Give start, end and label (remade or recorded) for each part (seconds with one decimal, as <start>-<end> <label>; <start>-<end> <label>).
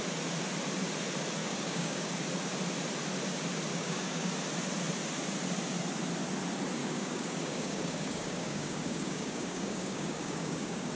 0.0-1.4 recorded; 1.4-2.1 remade; 2.1-3.7 recorded; 3.7-4.3 remade; 4.3-6.8 recorded; 6.8-10.9 remade